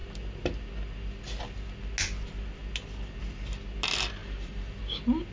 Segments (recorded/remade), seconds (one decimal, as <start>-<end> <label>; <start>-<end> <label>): 0.0-4.2 recorded; 4.2-4.8 remade; 4.8-5.3 recorded